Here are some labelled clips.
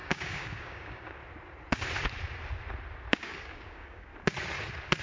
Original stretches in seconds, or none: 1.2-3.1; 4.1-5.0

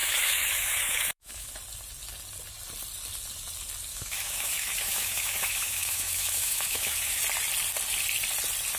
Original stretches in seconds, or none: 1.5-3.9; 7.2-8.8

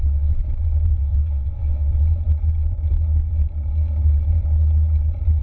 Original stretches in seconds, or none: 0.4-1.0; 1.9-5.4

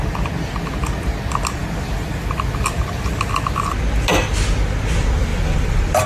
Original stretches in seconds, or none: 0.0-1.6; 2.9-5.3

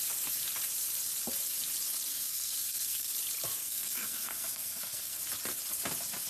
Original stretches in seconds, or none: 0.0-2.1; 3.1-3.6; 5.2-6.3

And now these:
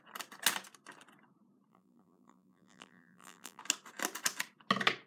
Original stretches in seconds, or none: 0.0-1.7; 3.6-5.1

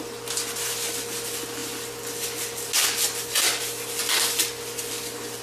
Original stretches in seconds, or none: 0.0-5.4

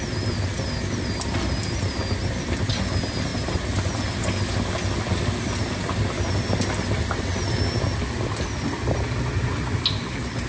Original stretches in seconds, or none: 0.0-10.5